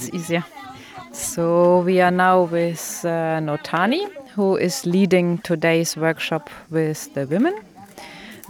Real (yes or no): yes